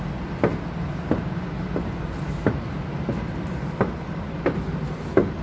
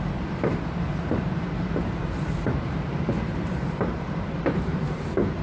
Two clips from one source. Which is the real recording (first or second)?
first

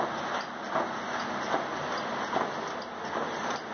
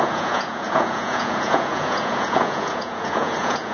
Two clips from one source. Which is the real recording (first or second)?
first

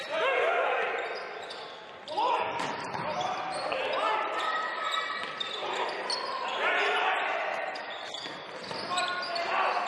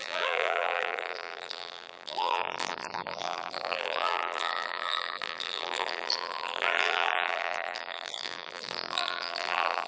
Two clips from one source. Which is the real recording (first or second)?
first